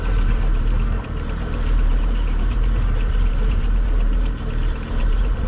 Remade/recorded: remade